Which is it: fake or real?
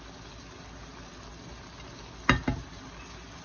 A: real